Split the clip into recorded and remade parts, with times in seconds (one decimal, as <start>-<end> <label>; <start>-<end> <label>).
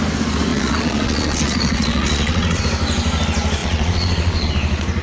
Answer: 0.0-0.5 recorded; 0.5-2.6 remade; 2.6-3.6 recorded; 3.6-4.5 remade; 4.5-5.0 recorded